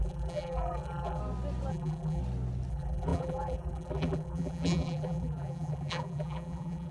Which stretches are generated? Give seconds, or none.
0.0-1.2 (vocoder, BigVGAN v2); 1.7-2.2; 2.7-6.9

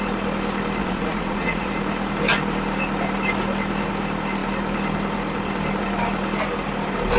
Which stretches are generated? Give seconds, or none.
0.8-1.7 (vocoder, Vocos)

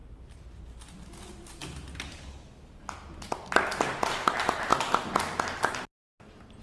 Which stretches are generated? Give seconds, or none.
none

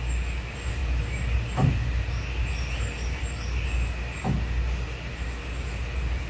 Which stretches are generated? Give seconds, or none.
none